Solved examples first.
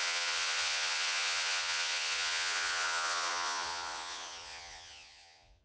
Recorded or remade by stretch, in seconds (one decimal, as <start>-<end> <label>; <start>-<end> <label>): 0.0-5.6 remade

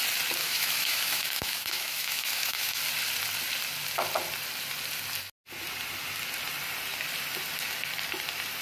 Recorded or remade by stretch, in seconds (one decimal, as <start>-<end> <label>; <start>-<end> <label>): 0.0-0.4 recorded; 0.4-2.8 remade; 2.8-8.6 recorded

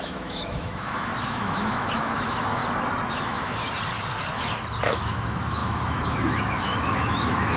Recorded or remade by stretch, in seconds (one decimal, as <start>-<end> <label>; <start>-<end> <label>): 0.0-2.6 remade; 2.6-3.1 recorded; 3.1-3.6 remade; 3.6-4.8 recorded; 4.8-7.6 remade

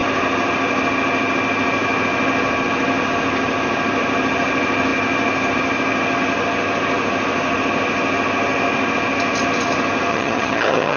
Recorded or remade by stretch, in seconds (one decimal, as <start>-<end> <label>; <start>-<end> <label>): 0.0-10.1 recorded; 10.1-11.0 remade